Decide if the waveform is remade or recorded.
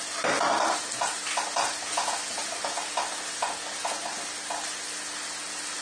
recorded